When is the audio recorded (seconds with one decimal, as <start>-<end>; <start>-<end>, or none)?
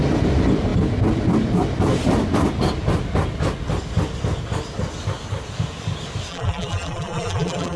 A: 0.0-6.3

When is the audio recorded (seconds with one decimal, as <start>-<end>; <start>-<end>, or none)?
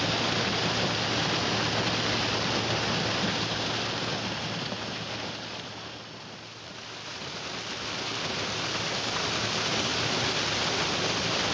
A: 0.0-9.9; 10.4-11.5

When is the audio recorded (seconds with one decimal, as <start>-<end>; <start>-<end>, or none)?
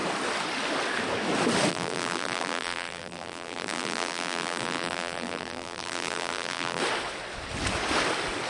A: 0.0-1.7; 6.8-8.5